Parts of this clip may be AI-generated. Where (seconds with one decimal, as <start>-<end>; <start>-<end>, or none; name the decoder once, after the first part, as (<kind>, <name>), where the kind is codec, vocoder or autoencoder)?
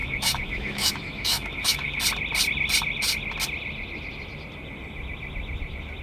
0.0-2.0 (autoencoder, DAC-VAE)